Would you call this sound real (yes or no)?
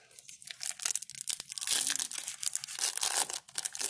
yes